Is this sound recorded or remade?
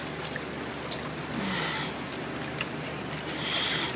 recorded